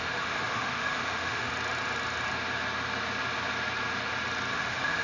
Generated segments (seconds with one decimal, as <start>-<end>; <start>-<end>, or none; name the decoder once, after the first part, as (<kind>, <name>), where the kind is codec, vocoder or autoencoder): 0.0-1.5 (autoencoder, DAC-VAE); 4.5-5.0